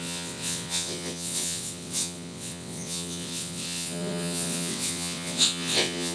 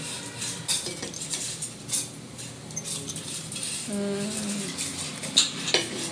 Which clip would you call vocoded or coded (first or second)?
first